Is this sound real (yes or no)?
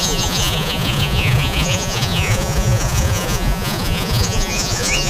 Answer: no